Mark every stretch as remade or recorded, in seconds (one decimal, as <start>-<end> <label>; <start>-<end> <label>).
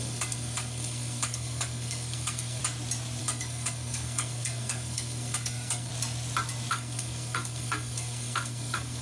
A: 0.0-2.6 remade; 2.6-3.2 recorded; 3.2-5.9 remade; 5.9-6.7 recorded; 6.7-9.0 remade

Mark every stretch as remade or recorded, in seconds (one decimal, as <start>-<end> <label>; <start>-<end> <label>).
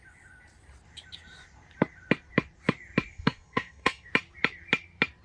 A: 0.0-3.1 recorded; 3.1-4.1 remade; 4.1-5.2 recorded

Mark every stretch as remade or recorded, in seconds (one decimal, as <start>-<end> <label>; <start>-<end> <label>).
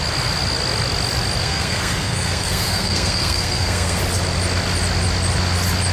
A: 0.0-1.4 recorded; 1.4-4.0 remade; 4.0-5.9 recorded